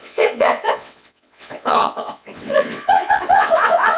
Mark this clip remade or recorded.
remade